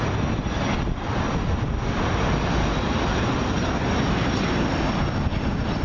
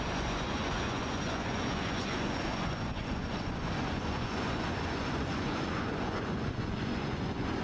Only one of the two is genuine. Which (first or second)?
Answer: first